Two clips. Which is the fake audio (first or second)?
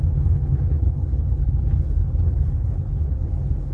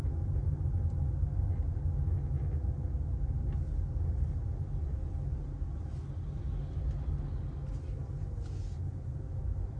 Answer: first